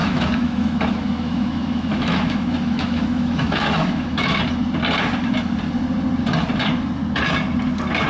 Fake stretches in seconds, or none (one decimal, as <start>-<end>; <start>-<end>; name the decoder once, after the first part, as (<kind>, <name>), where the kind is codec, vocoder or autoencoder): 0.0-4.4 (autoencoder, DAC-VAE)